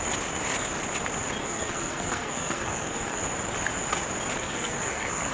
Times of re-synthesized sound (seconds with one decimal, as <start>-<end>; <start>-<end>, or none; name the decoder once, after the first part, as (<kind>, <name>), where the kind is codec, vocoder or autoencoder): 1.4-3.2 (codec, SNAC); 4.4-5.3

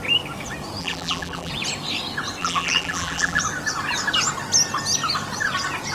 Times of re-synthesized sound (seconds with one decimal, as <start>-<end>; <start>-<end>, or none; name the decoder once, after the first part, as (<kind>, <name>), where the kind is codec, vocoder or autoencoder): 0.8-1.5 (vocoder, BigVGAN v2); 2.4-3.4